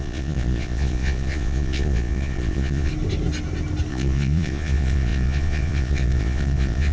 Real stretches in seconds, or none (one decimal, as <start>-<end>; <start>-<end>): 2.9-3.9